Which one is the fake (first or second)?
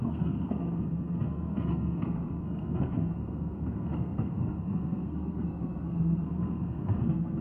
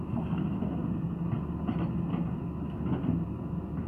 first